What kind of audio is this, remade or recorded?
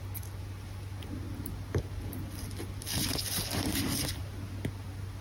recorded